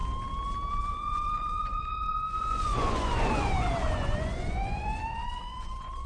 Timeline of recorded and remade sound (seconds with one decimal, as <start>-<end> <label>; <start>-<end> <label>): 0.0-0.7 recorded; 0.7-6.1 remade